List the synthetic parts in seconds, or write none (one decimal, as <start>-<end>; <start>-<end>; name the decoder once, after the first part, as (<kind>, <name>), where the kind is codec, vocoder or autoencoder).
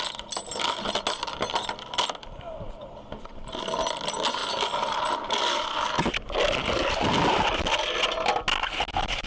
none